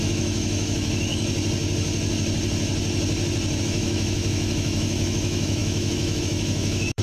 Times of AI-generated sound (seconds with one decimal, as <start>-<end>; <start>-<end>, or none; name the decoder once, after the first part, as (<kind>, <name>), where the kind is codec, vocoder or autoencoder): 0.0-1.1 (autoencoder, DAC-VAE); 3.6-7.0

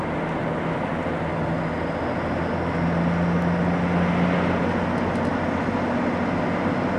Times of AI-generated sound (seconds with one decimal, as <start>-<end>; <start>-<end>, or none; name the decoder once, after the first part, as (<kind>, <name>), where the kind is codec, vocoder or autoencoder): none

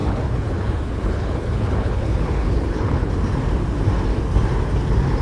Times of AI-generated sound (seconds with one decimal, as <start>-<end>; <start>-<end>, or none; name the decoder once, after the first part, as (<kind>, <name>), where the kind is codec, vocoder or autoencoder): 0.0-3.1 (codec, HILCodec)

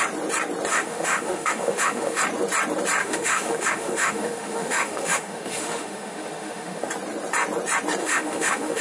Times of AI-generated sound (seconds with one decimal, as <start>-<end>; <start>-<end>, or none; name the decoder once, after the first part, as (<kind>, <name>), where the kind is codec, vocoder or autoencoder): 0.7-2.2 (autoencoder, DAC-VAE); 3.0-6.9; 8.0-8.8